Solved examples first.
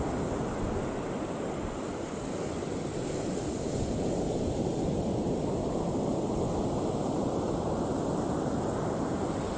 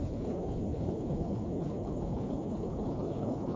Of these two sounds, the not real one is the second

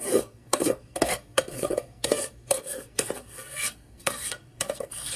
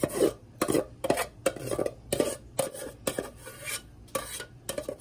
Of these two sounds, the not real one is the first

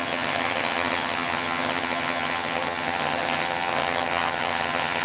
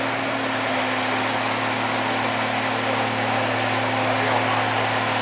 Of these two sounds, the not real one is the first